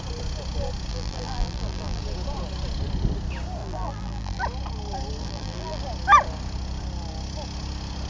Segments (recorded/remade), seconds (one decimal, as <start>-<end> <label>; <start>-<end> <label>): 0.0-0.9 recorded; 0.9-2.0 remade; 2.0-3.6 recorded; 3.6-4.4 remade; 4.4-5.2 recorded; 5.2-5.8 remade; 5.8-8.1 recorded